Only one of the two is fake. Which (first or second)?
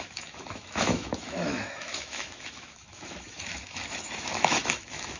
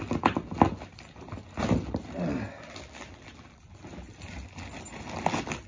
first